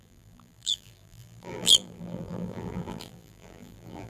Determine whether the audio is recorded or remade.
remade